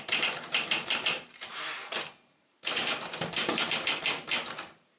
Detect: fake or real fake